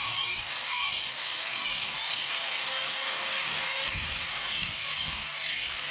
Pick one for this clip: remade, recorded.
remade